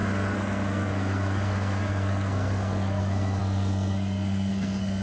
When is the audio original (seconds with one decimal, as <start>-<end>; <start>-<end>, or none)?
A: none